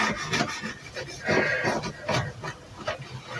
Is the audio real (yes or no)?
yes